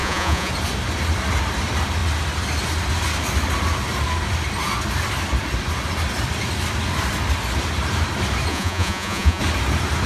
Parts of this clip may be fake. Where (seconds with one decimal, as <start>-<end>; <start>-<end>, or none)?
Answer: 0.0-0.5; 8.5-9.4